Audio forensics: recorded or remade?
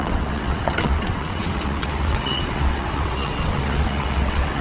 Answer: remade